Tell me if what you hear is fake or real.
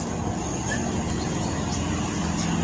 real